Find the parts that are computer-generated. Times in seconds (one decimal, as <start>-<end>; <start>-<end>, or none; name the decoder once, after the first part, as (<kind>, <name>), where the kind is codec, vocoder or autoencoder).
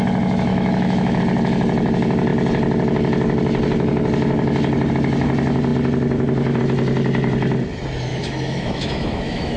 0.5-1.2 (autoencoder, DAC-VAE); 8.1-9.6